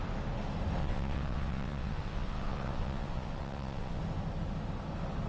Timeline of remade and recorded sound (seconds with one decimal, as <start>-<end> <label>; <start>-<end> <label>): 0.0-0.8 recorded; 0.8-4.0 remade; 4.0-5.3 recorded